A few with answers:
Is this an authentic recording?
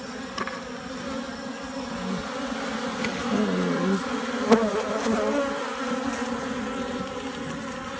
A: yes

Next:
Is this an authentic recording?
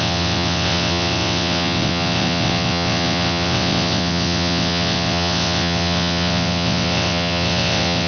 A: no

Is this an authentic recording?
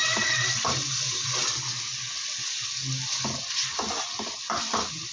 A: yes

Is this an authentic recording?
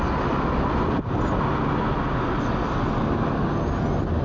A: yes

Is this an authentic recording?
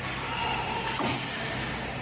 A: yes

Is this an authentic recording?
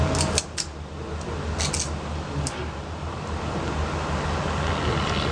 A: yes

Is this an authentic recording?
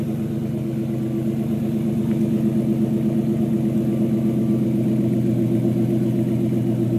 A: yes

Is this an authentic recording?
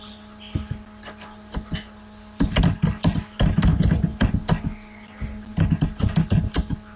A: yes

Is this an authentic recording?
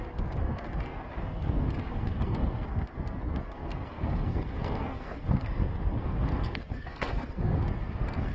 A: no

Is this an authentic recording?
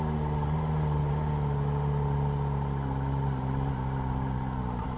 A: yes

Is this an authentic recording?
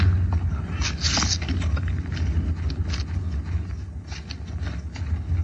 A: yes